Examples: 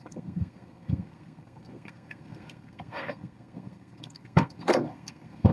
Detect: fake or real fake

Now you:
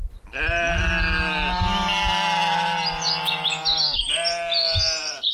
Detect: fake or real real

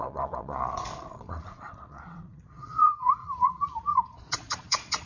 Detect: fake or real fake